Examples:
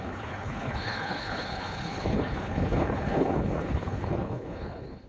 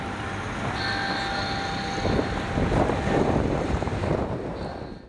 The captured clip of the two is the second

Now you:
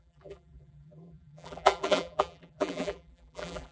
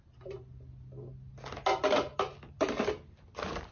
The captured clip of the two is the second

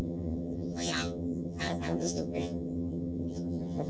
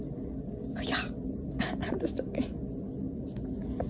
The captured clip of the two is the second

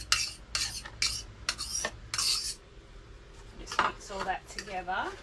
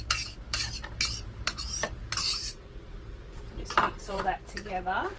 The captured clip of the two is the first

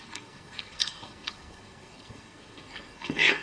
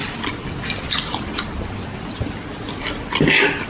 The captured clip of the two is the second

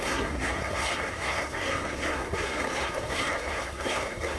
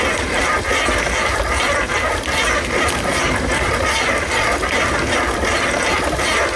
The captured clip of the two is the second